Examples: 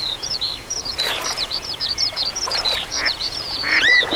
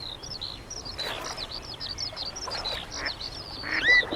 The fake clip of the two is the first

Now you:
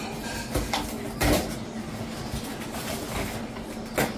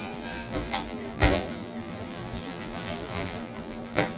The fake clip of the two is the second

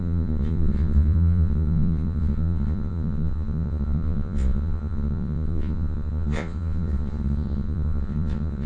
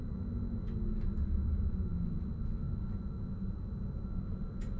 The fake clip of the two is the first